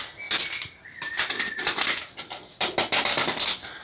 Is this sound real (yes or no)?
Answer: yes